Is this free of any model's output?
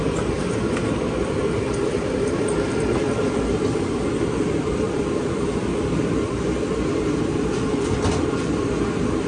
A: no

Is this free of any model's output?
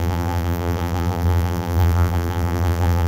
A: no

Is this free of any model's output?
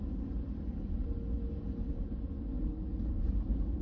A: yes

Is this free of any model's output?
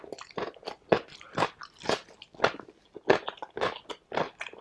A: yes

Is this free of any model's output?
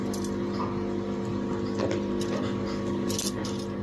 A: yes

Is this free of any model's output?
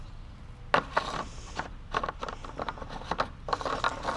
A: yes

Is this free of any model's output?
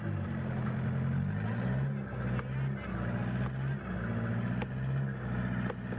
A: yes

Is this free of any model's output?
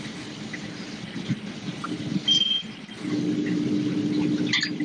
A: no